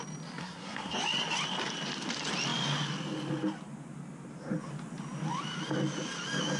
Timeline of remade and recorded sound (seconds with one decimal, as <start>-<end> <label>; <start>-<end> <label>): 0.0-0.4 recorded; 0.4-1.0 remade; 1.0-6.6 recorded